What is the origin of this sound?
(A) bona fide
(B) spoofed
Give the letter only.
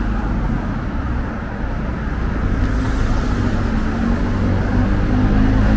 A